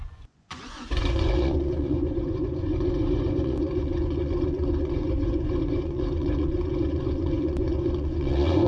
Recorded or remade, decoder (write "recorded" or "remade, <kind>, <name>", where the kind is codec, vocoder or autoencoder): remade, vocoder, Vocos